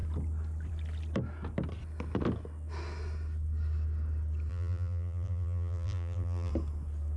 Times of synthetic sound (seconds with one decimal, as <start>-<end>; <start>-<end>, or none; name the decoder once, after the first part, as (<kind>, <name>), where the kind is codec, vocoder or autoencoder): 4.5-6.5 (vocoder, BigVGAN v2)